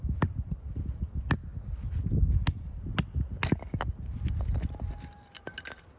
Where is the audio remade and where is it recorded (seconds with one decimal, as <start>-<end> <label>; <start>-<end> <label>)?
0.0-6.0 recorded